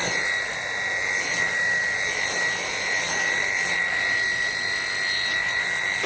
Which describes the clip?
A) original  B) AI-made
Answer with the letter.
A